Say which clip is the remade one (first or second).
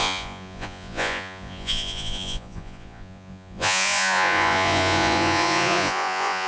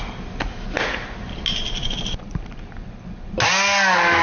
first